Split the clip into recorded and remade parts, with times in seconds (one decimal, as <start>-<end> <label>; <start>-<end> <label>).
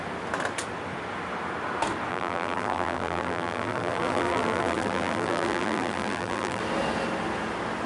0.0-2.1 recorded; 2.1-6.6 remade; 6.6-7.9 recorded